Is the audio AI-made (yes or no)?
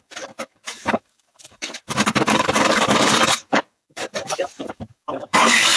yes